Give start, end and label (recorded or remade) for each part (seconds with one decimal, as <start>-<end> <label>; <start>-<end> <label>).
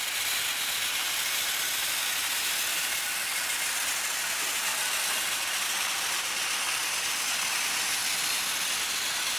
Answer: 0.0-9.4 recorded